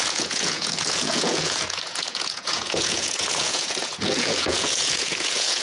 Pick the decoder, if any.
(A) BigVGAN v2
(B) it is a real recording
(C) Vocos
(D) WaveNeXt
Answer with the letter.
C